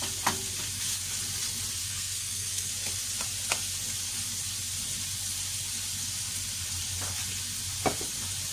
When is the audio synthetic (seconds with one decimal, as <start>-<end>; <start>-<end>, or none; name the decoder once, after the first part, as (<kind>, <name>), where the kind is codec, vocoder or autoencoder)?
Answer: 1.8-2.7 (codec, SNAC)